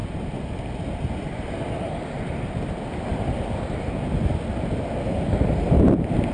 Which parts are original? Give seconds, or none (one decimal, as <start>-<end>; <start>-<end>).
0.0-6.3